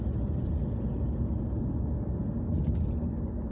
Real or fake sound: real